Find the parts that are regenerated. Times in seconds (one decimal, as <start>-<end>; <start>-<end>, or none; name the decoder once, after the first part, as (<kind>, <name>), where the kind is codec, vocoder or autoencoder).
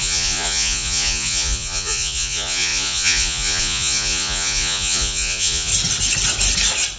0.0-5.7 (vocoder, Vocos)